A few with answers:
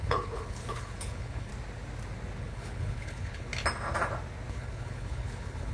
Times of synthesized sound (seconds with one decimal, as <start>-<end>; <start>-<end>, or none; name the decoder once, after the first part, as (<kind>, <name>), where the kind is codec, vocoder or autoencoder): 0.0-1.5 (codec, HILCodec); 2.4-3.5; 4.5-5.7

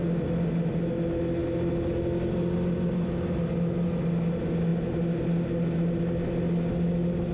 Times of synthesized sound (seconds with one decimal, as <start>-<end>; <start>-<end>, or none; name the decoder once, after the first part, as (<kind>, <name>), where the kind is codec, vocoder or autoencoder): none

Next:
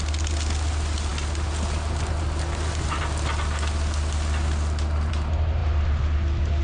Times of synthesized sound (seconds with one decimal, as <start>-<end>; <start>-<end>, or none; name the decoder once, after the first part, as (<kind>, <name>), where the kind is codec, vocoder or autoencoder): none

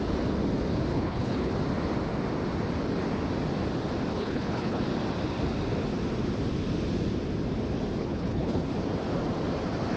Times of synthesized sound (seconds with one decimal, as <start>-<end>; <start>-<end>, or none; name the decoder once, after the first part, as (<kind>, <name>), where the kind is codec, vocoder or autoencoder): 0.9-1.5 (codec, HILCodec); 4.1-4.8; 8.0-8.7

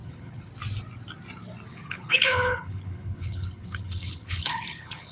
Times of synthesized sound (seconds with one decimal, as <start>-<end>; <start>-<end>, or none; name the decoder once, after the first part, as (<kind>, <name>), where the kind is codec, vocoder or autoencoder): 0.0-0.5 (codec, HILCodec); 1.7-5.1